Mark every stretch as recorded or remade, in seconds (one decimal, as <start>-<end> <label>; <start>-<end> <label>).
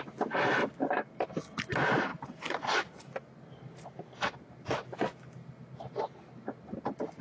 0.0-2.1 recorded; 2.1-2.6 remade; 2.6-7.2 recorded